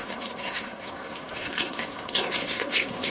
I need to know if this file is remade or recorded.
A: remade